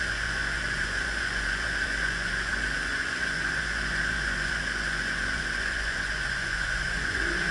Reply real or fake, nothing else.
fake